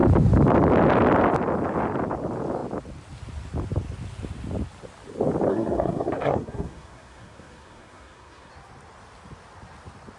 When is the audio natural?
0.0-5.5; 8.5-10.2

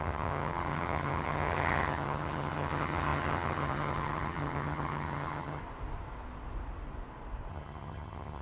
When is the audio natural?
5.6-7.5

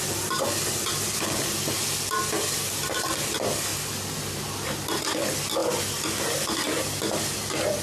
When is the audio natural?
0.0-7.8

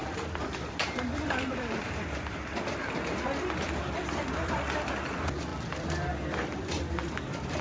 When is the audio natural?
2.9-5.5

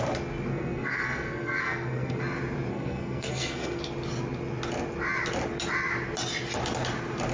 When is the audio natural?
0.0-0.5; 2.2-2.7; 3.8-7.3

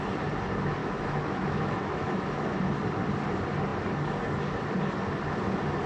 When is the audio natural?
0.0-0.8; 2.6-5.9

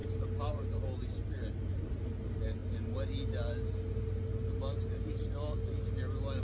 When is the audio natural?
0.0-6.4